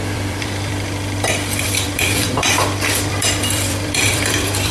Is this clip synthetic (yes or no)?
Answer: yes